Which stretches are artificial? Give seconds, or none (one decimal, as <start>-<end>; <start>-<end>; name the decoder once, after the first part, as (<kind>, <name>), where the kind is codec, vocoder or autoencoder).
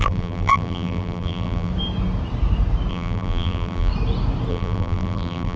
0.0-1.7 (vocoder, BigVGAN v2); 2.9-3.9; 4.5-5.6